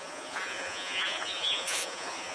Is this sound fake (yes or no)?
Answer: yes